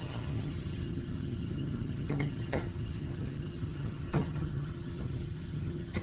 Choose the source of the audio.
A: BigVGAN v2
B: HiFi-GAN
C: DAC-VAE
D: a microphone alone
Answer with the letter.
B